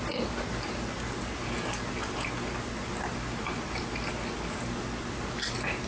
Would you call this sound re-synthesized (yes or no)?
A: no